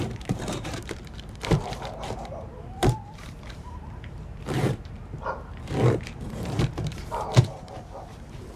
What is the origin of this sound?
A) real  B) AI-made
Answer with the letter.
B